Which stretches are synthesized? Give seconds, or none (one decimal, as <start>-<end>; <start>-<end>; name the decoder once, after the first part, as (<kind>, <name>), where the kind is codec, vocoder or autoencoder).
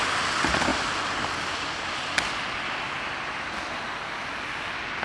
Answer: none